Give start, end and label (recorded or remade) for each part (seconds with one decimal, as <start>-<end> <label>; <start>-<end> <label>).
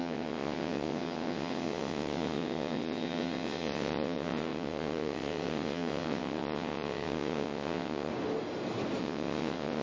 0.0-8.1 remade; 8.1-9.0 recorded; 9.0-9.8 remade